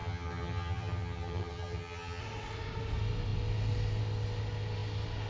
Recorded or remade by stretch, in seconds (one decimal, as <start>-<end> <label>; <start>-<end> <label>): 0.0-2.2 remade; 2.2-5.3 recorded